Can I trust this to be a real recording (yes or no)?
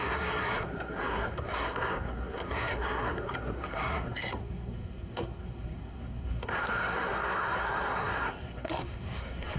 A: no